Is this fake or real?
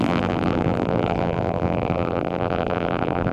fake